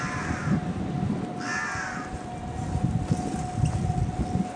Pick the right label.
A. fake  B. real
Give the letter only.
B